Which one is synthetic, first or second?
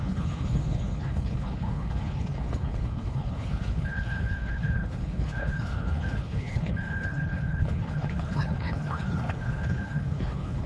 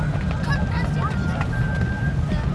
first